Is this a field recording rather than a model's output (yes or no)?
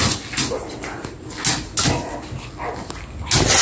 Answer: yes